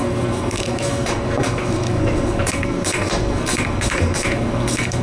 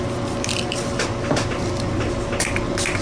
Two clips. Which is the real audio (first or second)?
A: second